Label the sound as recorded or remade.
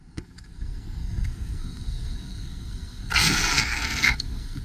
remade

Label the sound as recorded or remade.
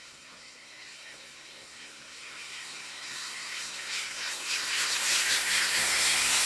remade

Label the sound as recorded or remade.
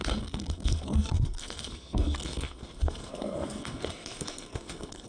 remade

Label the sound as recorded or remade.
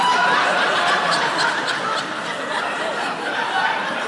recorded